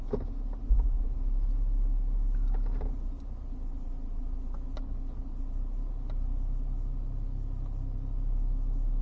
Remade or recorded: recorded